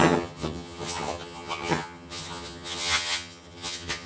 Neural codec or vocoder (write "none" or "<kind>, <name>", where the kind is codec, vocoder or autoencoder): vocoder, HiFi-GAN